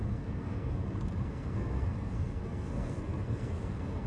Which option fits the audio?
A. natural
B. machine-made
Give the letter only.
B